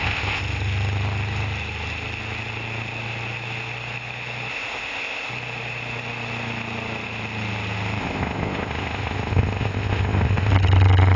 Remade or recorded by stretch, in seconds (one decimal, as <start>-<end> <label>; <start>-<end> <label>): 0.0-0.4 remade; 0.4-4.5 recorded; 4.5-5.3 remade; 5.3-8.0 recorded; 8.0-10.5 remade; 10.5-11.2 recorded